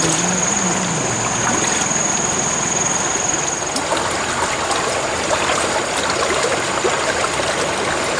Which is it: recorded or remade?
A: recorded